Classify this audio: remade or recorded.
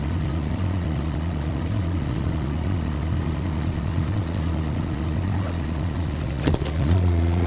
remade